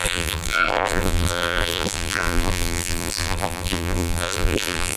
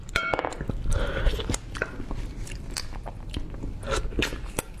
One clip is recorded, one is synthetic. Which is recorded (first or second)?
second